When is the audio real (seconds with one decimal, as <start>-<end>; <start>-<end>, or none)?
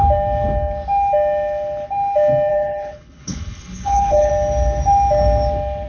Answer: 0.0-2.5; 4.3-5.9